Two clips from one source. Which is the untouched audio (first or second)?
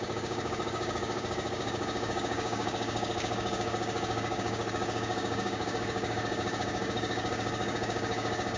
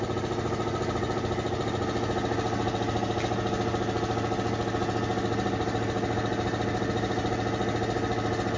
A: second